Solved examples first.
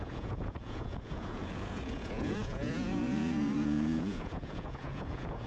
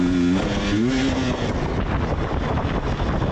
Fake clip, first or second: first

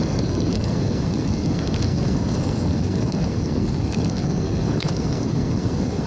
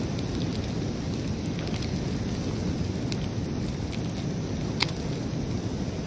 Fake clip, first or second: first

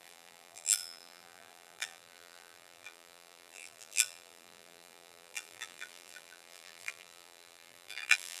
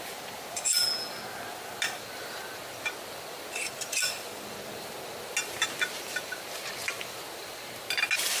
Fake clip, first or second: first